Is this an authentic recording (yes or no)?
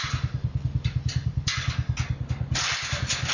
yes